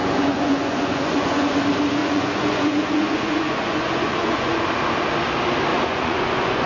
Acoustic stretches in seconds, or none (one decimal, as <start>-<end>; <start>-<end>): 1.6-2.0; 4.6-5.7